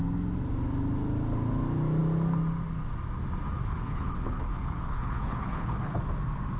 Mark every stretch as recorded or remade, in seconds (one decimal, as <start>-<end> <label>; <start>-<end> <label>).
0.0-3.6 recorded; 3.6-6.1 remade; 6.1-6.6 recorded